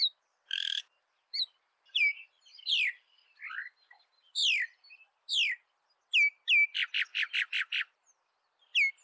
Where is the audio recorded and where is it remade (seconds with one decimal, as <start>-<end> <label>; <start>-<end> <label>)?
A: 0.0-1.3 recorded; 1.3-3.5 remade; 3.5-7.1 recorded; 7.1-8.6 remade; 8.6-9.0 recorded